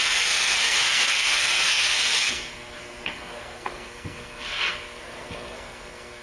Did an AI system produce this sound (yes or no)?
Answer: yes